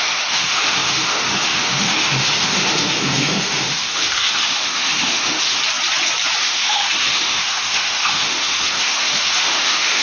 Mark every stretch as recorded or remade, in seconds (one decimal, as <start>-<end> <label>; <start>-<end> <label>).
0.0-5.6 remade; 5.6-6.4 recorded; 6.4-10.0 remade